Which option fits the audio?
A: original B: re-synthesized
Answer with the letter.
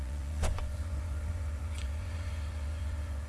B